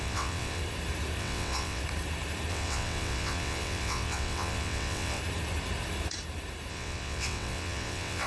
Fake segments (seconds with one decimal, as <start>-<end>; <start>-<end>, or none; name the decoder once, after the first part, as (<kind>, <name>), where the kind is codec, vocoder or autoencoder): 0.0-0.6 (vocoder, WaveNeXt); 1.2-1.8; 2.5-5.2; 6.7-8.3